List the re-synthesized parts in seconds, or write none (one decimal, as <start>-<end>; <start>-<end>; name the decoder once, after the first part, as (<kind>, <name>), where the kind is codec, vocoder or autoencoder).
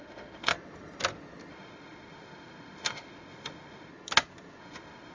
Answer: 0.0-0.5 (autoencoder, DAC-VAE); 1.5-3.9; 4.6-5.1